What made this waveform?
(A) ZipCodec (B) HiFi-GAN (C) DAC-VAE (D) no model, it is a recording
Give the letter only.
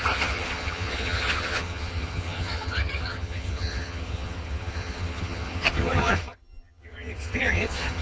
B